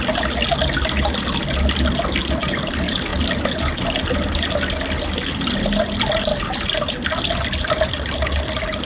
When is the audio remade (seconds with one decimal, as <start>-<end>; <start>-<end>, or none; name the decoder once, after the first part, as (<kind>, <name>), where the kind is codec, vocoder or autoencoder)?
none